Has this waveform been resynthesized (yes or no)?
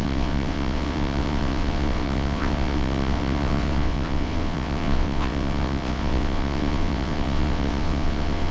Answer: yes